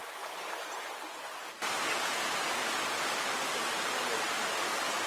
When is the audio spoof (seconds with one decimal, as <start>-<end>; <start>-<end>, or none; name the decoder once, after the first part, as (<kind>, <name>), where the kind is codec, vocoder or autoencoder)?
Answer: none